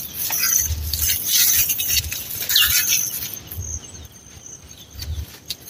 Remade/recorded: recorded